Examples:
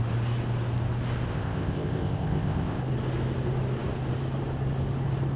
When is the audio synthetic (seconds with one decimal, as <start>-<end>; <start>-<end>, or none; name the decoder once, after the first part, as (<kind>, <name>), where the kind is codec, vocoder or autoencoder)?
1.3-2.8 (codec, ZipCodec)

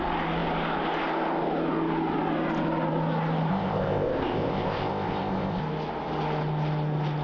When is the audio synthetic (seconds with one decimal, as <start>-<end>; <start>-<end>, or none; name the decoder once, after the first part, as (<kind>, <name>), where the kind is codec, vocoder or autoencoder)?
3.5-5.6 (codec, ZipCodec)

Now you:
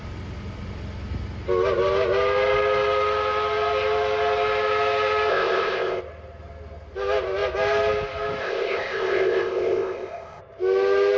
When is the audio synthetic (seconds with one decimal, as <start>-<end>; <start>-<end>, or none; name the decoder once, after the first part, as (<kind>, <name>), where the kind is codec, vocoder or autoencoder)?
5.3-6.0 (codec, ZipCodec); 8.4-10.4

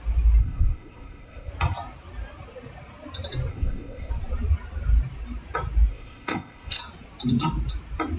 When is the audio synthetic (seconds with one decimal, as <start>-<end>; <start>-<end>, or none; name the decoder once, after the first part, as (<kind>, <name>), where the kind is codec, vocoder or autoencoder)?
0.4-1.5 (codec, ZipCodec); 3.5-4.1; 5.9-6.8

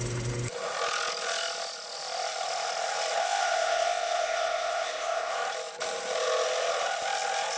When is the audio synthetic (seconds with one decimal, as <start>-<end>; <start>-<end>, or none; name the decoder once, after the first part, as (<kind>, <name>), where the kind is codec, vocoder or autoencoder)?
3.2-5.3 (codec, ZipCodec)

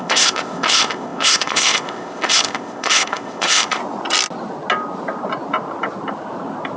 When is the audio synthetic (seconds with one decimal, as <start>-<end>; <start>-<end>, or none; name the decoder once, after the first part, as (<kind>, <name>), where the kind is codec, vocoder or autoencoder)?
0.0-3.8 (codec, ZipCodec)